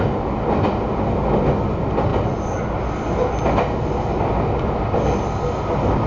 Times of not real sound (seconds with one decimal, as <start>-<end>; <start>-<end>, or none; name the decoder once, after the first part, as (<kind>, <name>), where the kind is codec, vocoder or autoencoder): none